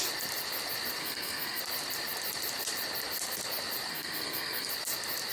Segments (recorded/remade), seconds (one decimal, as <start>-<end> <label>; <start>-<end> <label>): 0.0-1.0 recorded; 1.0-1.6 remade; 1.6-3.9 recorded; 3.9-4.7 remade; 4.7-5.3 recorded